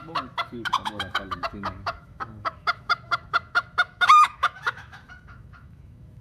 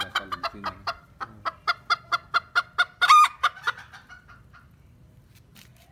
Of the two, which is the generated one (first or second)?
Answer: first